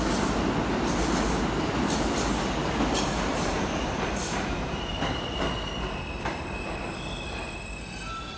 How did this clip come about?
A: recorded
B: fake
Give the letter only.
A